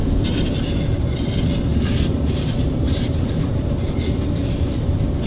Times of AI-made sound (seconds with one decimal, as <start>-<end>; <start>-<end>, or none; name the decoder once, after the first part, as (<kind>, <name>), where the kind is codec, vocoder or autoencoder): 0.0-0.8 (vocoder, BigVGAN v2); 1.7-5.3